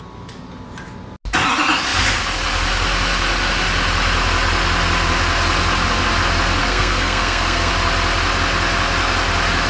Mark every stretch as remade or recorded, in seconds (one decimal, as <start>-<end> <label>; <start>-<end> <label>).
0.0-6.6 recorded; 6.6-7.7 remade; 7.7-9.7 recorded